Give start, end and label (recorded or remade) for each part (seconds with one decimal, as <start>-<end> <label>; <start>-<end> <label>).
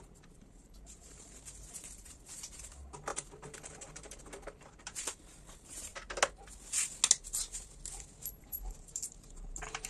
0.0-5.9 remade; 5.9-8.4 recorded; 8.4-9.9 remade